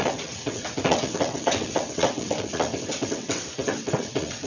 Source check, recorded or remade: remade